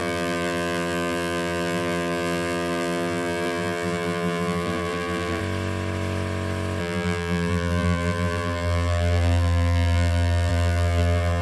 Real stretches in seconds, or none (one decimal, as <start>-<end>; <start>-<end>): 5.4-6.8